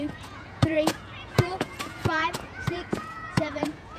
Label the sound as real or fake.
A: fake